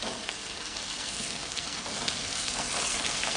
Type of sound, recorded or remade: remade